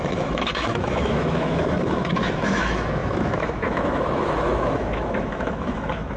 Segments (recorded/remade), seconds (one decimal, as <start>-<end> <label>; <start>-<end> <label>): 0.0-6.2 remade